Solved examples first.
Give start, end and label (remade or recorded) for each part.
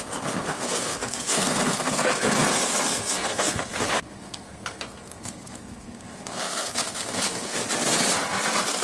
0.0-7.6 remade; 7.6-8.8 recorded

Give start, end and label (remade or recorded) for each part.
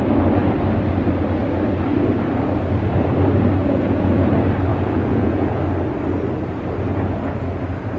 0.0-3.6 recorded; 3.6-4.3 remade; 4.3-4.7 recorded; 4.7-5.6 remade; 5.6-6.9 recorded; 6.9-7.6 remade; 7.6-8.0 recorded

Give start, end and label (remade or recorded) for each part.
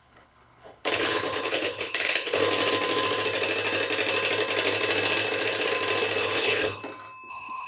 0.0-2.4 remade; 2.4-6.2 recorded; 6.2-6.8 remade; 6.8-7.3 recorded; 7.3-7.7 remade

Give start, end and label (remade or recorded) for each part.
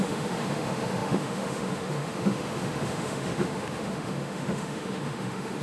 0.0-5.6 remade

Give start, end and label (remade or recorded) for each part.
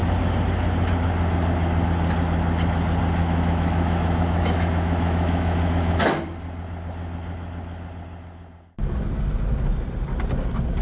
0.0-3.2 recorded; 3.2-6.0 remade; 6.0-10.8 recorded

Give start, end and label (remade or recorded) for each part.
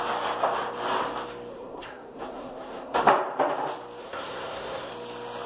0.0-1.5 recorded; 1.5-3.0 remade; 3.0-4.0 recorded; 4.0-4.9 remade; 4.9-5.5 recorded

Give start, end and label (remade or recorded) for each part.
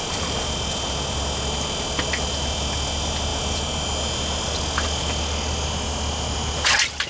0.0-7.1 recorded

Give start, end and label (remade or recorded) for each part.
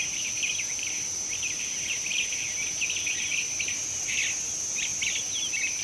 0.0-5.8 recorded